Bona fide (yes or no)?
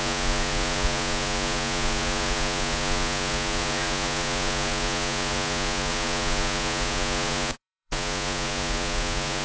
no